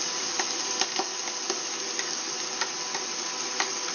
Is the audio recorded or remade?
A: recorded